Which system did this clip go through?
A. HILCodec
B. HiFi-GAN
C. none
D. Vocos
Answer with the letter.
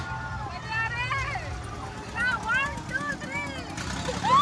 C